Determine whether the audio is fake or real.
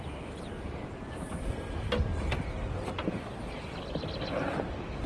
real